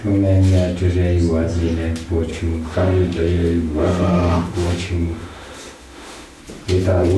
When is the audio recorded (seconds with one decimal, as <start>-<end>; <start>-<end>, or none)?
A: 0.0-2.3; 6.4-7.2